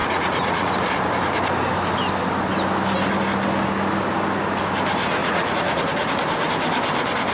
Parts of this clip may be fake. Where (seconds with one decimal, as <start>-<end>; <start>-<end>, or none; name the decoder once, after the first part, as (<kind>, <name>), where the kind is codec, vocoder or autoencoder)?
0.0-0.7 (vocoder, Vocos); 5.2-5.8

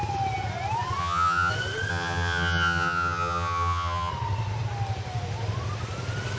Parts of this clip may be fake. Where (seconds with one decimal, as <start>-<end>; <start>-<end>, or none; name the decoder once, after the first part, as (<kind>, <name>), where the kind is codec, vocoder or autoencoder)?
1.0-1.5 (vocoder, HiFi-GAN); 1.9-4.1

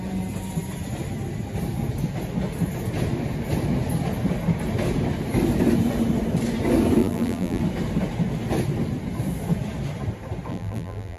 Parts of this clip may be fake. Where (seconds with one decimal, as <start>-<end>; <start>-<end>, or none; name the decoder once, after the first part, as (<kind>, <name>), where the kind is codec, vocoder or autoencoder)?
7.0-7.6 (vocoder, BigVGAN v2); 10.5-11.2

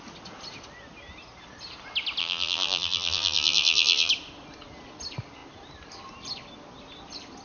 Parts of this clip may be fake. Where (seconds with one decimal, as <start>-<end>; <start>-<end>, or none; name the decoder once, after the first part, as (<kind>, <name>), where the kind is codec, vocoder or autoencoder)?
2.2-4.1 (vocoder, BigVGAN v2)

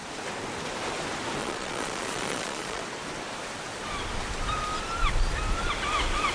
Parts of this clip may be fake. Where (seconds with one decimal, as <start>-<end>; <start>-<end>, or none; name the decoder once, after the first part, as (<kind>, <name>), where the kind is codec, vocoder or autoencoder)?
1.4-2.8 (vocoder, Vocos)

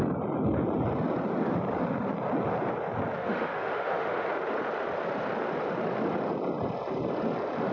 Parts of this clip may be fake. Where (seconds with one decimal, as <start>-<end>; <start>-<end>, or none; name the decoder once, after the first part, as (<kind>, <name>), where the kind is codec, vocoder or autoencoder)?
3.2-4.3 (autoencoder, DAC-VAE)

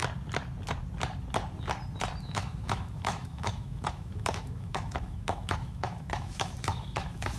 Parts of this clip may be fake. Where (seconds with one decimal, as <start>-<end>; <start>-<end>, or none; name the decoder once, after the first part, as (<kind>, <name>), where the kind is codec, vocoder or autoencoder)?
2.2-7.4 (autoencoder, DAC-VAE)

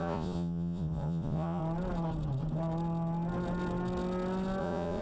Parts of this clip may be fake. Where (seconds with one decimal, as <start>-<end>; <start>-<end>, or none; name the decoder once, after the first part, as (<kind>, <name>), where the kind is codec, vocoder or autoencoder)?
0.0-1.6 (vocoder, Vocos); 4.6-5.0